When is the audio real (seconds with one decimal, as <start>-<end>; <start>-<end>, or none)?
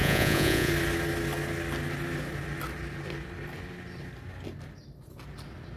0.7-5.8